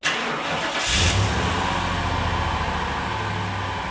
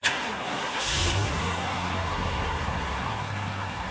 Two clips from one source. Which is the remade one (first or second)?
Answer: second